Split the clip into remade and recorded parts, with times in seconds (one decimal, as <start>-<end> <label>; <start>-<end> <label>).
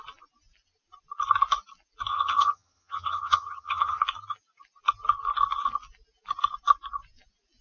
0.0-2.1 recorded; 2.1-4.0 remade; 4.0-7.6 recorded